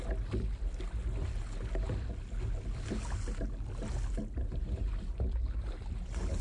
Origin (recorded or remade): recorded